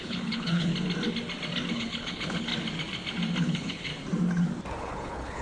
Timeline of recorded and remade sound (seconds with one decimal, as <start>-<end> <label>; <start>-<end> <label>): 0.0-0.7 remade; 0.7-1.7 recorded; 1.7-2.5 remade; 2.5-3.4 recorded; 3.4-3.9 remade; 3.9-4.8 recorded; 4.8-5.4 remade